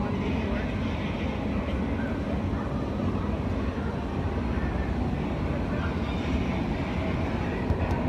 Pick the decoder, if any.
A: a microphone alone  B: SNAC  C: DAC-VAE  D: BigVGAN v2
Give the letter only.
A